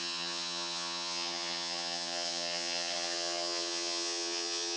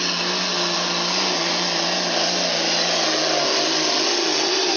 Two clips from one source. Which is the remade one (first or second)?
first